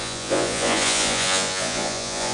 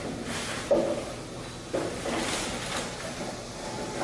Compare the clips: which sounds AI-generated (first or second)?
first